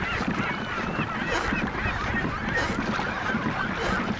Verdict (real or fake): real